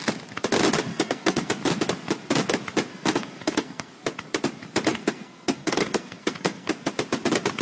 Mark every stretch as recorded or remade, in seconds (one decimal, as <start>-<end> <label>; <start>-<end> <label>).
0.0-0.9 recorded; 0.9-1.5 remade; 1.5-2.9 recorded; 2.9-3.9 remade; 3.9-4.9 recorded; 4.9-6.9 remade; 6.9-7.6 recorded